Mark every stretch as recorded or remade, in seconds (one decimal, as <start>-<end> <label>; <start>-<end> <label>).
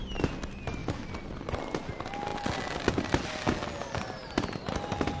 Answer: 0.0-4.2 recorded; 4.2-4.7 remade; 4.7-5.2 recorded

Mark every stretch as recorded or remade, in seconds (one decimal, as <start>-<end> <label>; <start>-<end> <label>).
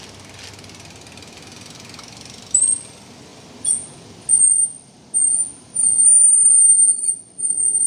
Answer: 0.0-7.9 recorded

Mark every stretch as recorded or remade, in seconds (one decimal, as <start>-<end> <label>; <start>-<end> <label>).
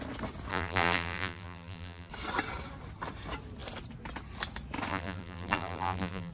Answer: 0.0-0.5 recorded; 0.5-2.1 remade; 2.1-4.9 recorded; 4.9-6.3 remade